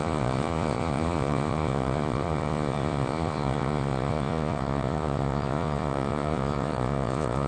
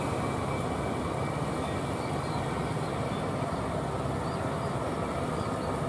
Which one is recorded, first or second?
second